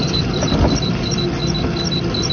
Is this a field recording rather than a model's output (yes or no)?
yes